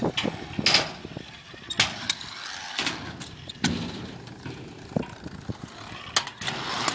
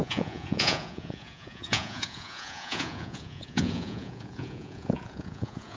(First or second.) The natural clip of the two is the first